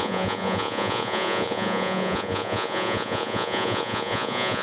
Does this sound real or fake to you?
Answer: fake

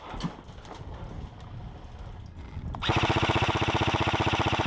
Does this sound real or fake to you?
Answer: real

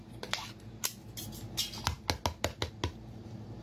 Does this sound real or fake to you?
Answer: real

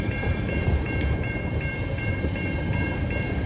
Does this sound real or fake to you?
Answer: fake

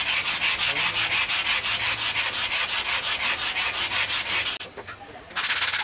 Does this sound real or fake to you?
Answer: real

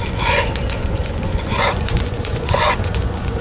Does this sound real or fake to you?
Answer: fake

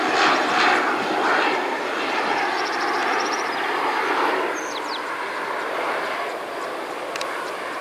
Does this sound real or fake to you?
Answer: real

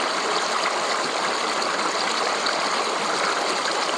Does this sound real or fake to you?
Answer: real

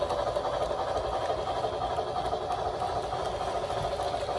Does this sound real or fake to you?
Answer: real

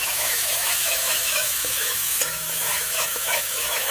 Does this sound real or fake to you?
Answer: fake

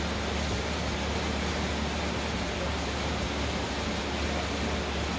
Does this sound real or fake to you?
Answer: real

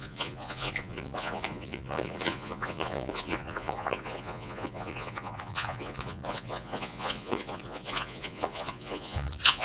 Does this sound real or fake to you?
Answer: fake